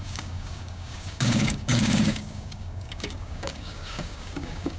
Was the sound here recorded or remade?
remade